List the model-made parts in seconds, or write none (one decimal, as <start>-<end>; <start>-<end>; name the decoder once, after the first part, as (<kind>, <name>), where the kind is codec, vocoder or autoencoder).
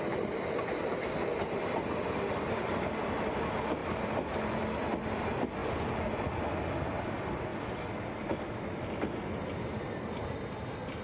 none